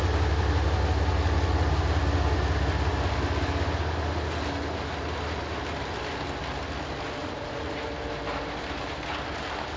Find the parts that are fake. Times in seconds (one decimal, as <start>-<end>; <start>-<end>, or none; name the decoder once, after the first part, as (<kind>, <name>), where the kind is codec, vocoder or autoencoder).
7.2-7.8 (vocoder, Vocos)